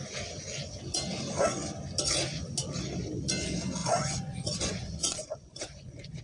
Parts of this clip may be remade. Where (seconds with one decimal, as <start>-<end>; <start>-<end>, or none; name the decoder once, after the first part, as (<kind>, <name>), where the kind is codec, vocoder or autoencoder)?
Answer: 3.8-6.2 (vocoder, Vocos)